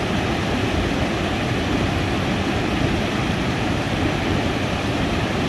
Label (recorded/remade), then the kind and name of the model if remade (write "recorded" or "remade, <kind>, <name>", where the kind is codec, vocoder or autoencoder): remade, vocoder, BigVGAN v2